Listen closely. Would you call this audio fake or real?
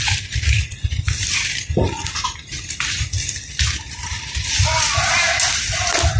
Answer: real